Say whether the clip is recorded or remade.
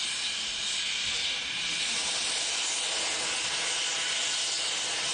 recorded